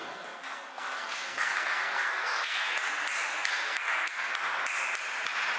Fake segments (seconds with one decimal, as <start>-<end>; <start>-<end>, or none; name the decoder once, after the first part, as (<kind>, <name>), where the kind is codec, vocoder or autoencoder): 0.0-2.9 (codec, SNAC); 3.3-4.3